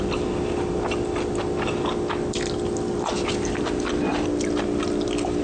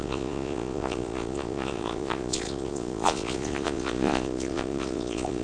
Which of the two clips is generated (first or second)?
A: second